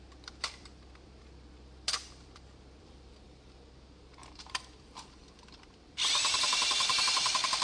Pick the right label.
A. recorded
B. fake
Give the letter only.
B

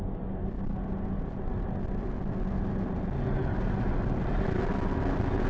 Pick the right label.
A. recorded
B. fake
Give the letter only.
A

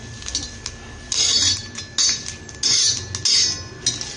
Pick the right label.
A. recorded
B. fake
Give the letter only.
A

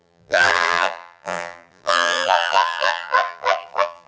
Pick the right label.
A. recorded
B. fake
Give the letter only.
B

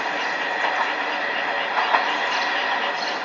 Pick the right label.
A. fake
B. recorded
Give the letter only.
B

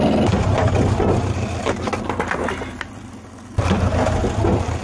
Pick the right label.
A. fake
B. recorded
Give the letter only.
B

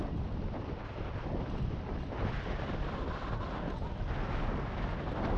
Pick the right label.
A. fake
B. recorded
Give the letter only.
B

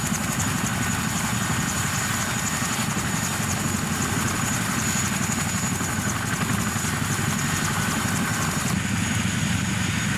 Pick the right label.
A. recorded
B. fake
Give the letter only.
A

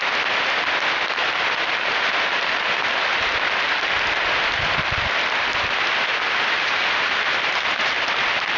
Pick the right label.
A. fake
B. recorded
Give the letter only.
B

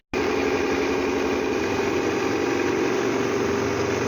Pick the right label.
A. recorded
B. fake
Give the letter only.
A